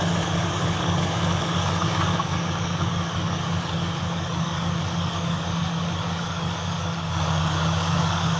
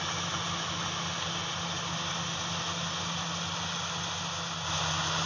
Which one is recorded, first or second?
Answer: second